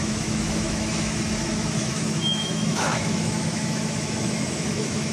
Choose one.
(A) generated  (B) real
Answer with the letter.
A